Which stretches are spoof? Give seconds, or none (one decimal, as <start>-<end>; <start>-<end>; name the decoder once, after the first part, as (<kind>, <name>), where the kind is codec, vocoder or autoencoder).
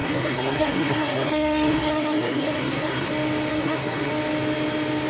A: 0.0-3.1 (codec, SNAC); 3.5-4.1